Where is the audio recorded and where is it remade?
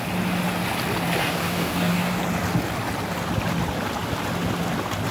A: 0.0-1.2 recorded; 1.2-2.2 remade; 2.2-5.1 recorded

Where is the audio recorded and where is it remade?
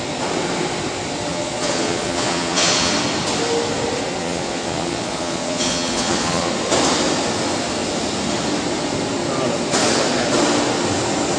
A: 0.0-1.3 recorded; 1.3-2.9 remade; 2.9-4.2 recorded; 4.2-6.5 remade; 6.5-11.4 recorded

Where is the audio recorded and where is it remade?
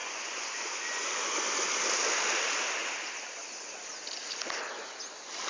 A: 0.0-1.7 remade; 1.7-5.5 recorded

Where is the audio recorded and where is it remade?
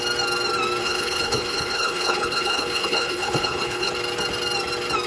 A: 0.0-0.8 recorded; 0.8-3.9 remade; 3.9-5.1 recorded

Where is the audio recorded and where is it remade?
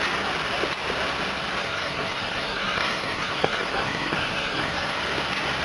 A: 0.0-1.6 recorded; 1.6-5.0 remade; 5.0-5.6 recorded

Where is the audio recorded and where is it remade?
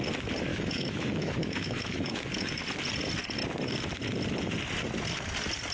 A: 0.0-0.5 recorded; 0.5-2.6 remade; 2.6-5.7 recorded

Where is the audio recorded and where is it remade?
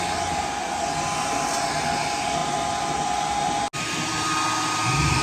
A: 0.0-5.2 recorded